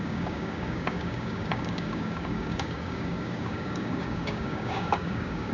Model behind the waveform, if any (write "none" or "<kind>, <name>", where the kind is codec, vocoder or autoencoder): codec, DAC